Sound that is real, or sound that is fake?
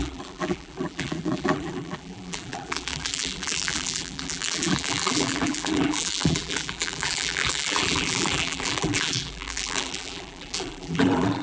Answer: fake